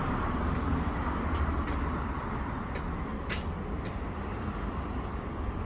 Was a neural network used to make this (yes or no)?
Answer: no